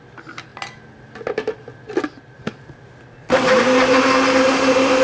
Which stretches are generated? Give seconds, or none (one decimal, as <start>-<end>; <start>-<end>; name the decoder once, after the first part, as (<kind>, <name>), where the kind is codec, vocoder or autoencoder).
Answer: none